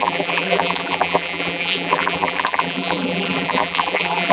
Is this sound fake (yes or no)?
yes